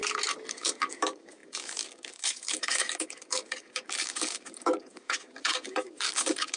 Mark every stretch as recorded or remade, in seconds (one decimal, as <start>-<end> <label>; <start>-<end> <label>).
0.0-0.5 recorded; 0.5-6.6 remade